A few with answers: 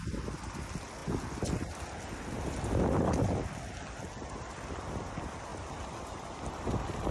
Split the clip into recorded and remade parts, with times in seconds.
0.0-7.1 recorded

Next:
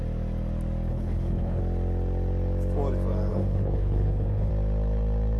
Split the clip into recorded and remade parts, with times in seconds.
0.0-0.9 recorded; 0.9-1.6 remade; 1.6-3.3 recorded; 3.3-4.5 remade; 4.5-5.4 recorded

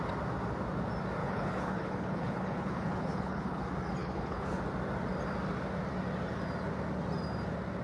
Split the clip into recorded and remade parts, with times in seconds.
0.0-1.2 recorded; 1.2-3.6 remade; 3.6-4.0 recorded; 4.0-4.6 remade; 4.6-7.8 recorded